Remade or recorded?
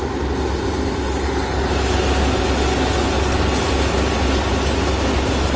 recorded